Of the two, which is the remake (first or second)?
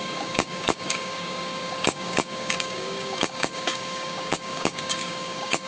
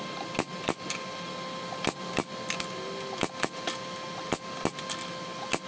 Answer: first